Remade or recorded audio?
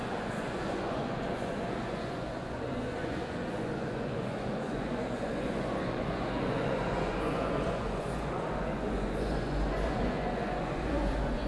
remade